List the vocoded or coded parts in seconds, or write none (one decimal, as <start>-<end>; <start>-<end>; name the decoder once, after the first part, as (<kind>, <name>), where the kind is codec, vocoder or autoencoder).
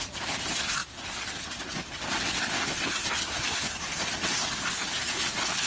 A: 0.0-5.7 (vocoder, BigVGAN v2)